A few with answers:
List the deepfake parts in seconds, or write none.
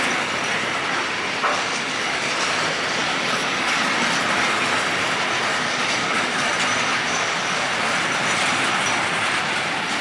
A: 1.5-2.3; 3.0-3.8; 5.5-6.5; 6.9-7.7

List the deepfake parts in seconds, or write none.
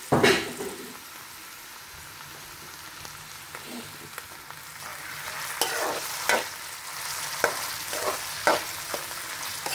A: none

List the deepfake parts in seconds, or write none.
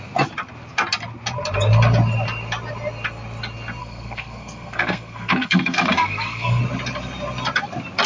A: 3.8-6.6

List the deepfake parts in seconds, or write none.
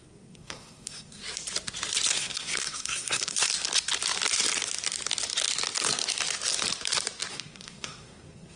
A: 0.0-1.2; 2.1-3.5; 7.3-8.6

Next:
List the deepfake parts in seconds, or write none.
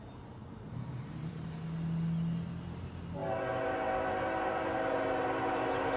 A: 0.4-1.5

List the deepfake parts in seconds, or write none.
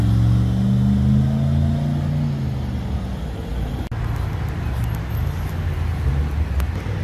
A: none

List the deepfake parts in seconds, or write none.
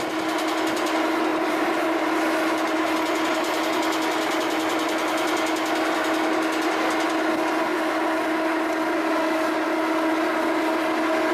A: 1.3-2.0